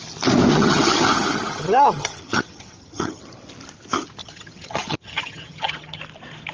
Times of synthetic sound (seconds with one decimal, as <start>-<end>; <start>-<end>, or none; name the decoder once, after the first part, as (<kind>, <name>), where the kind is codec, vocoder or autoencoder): 0.5-3.2 (vocoder, HiFi-GAN); 4.2-6.0